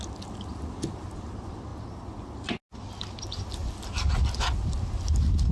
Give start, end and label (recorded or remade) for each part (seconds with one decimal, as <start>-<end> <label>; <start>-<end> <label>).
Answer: 0.0-5.5 recorded